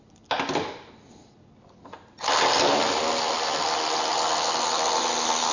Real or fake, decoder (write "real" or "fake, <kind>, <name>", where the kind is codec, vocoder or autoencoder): real